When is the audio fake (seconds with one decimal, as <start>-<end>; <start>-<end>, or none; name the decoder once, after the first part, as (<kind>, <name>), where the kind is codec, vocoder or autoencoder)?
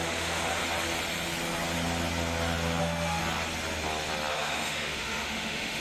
0.0-0.6 (autoencoder, DAC-VAE); 2.8-3.2; 4.3-5.8